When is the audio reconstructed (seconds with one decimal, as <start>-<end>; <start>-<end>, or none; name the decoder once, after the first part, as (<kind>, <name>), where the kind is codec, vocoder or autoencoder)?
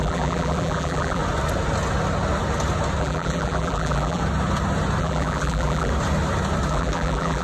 0.0-1.2 (vocoder, BigVGAN v2); 3.0-4.2; 5.0-5.9; 6.7-7.4